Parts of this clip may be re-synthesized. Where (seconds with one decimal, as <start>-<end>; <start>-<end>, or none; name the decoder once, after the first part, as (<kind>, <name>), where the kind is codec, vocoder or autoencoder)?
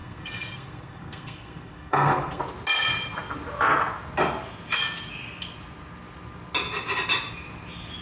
0.0-2.4 (codec, SNAC)